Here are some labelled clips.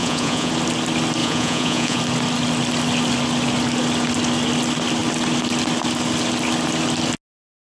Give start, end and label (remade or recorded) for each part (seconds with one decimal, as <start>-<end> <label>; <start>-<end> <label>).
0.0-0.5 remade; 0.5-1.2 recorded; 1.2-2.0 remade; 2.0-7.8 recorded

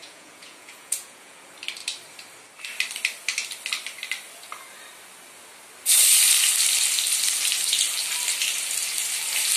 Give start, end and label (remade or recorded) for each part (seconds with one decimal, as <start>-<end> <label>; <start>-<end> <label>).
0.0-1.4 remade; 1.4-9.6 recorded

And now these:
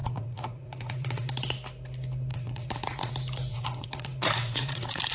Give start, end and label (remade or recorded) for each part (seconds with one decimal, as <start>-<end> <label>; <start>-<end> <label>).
0.0-1.3 remade; 1.3-2.3 recorded; 2.3-3.1 remade; 3.1-3.5 recorded; 3.5-5.1 remade

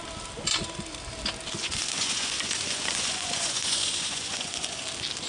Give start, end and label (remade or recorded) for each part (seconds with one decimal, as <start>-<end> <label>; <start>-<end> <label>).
0.0-1.6 recorded; 1.6-4.8 remade; 4.8-5.3 recorded

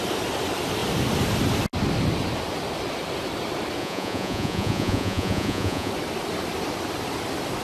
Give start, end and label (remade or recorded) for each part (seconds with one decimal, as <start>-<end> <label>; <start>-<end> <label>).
0.0-3.8 recorded; 3.8-5.9 remade; 5.9-7.6 recorded

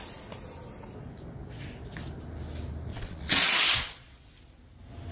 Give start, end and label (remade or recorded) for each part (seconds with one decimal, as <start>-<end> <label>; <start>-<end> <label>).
0.0-2.9 recorded; 2.9-4.3 remade; 4.3-5.1 recorded

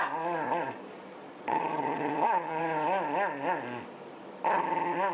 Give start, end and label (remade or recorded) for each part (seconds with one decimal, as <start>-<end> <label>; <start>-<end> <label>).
0.0-1.3 recorded; 1.3-2.6 remade; 2.6-5.1 recorded